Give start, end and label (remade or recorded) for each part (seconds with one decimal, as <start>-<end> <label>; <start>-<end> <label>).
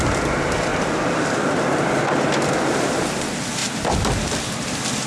0.0-5.1 recorded